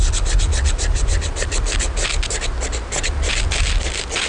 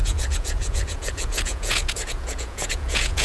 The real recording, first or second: first